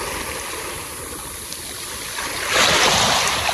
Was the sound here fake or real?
real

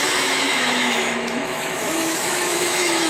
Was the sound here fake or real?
fake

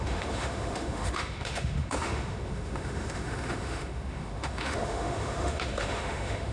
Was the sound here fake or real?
fake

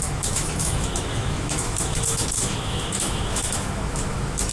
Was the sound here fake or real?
fake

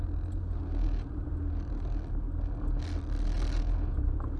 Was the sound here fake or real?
real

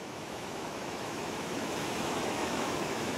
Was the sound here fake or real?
fake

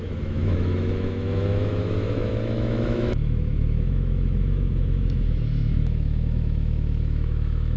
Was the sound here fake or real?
fake